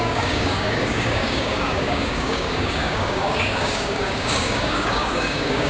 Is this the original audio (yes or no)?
no